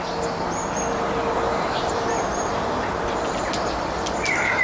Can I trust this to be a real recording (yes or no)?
yes